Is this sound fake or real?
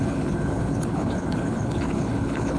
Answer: fake